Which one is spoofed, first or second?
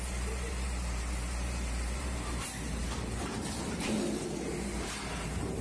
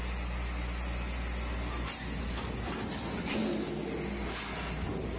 first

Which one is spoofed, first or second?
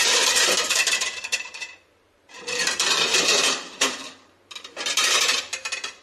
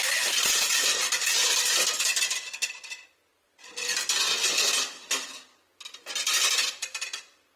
first